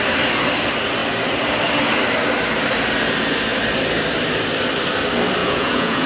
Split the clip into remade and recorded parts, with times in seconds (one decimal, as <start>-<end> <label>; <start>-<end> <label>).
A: 0.0-5.4 recorded; 5.4-6.1 remade